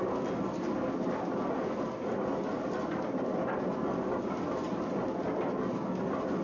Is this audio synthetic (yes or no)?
no